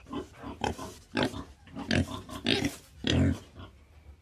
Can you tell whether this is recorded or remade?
recorded